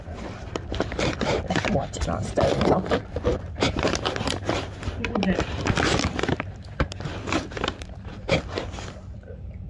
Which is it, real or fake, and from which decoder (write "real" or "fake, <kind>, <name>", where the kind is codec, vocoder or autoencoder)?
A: fake, vocoder, BigVGAN v2